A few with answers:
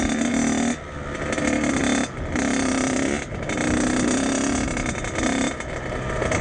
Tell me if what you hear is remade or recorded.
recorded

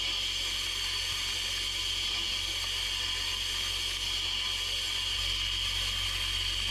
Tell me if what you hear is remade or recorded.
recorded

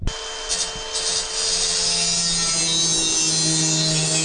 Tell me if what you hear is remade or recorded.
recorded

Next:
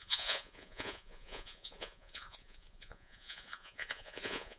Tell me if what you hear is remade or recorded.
remade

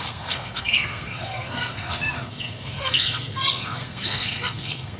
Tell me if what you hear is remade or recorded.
remade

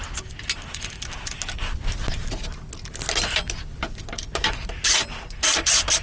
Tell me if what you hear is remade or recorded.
recorded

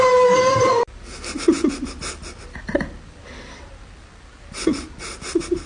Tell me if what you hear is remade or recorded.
recorded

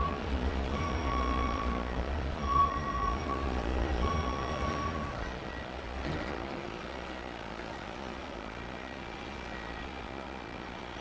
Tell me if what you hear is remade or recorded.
remade